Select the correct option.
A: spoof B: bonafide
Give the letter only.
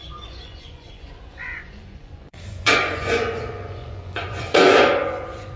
A